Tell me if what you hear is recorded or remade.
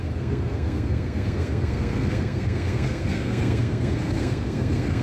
remade